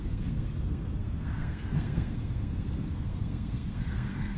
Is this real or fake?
fake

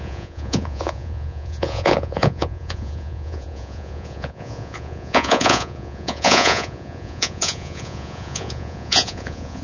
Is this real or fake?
fake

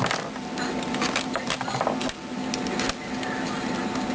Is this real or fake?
real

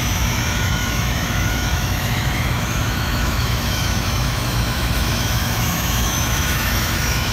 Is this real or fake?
fake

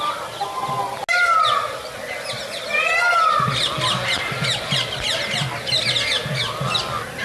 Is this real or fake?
real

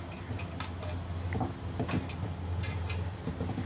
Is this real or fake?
real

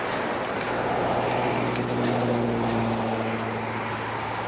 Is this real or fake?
real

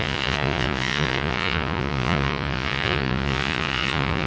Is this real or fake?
fake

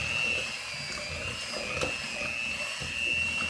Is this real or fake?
real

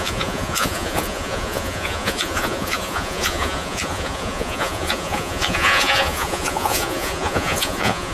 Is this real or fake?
fake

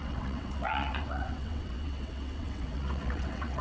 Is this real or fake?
fake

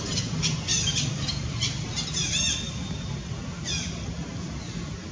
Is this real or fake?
real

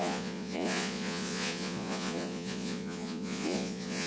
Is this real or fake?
fake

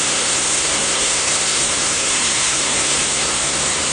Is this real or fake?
fake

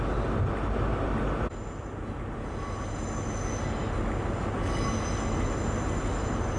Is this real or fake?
real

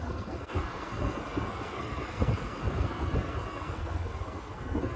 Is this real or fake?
fake